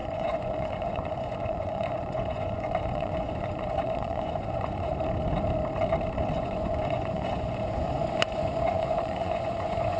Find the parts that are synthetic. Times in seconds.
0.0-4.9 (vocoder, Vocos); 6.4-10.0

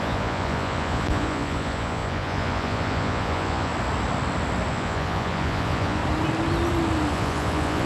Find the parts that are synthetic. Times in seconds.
0.0-3.7 (vocoder, Vocos); 4.7-6.0; 7.1-7.9

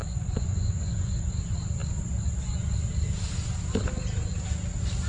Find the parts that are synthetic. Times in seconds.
0.0-1.3 (vocoder, Vocos)

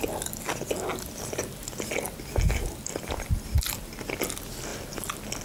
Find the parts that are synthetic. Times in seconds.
none

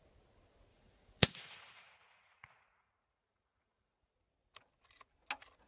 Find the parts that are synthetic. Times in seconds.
0.7-4.1 (vocoder, Vocos)

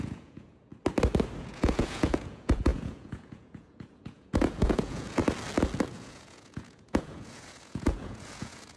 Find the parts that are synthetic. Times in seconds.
0.0-0.7 (vocoder, Vocos); 1.4-5.2; 5.9-8.8

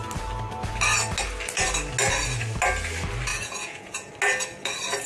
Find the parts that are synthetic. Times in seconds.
3.3-4.1 (vocoder, Vocos)

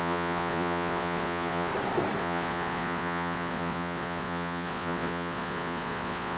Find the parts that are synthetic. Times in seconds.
0.0-1.7 (vocoder, Vocos); 2.2-6.4